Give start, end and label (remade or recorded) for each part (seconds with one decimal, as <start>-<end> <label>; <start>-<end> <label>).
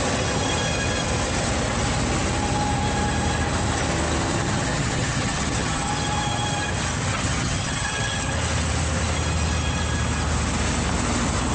0.0-4.3 recorded; 4.3-5.9 remade; 5.9-7.1 recorded; 7.1-8.3 remade; 8.3-11.5 recorded